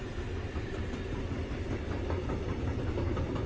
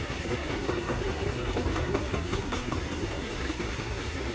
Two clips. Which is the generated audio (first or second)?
second